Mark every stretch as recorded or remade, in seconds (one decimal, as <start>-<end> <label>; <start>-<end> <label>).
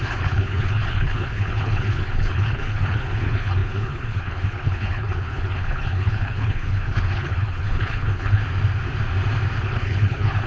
0.0-8.4 remade; 8.4-9.6 recorded; 9.6-10.5 remade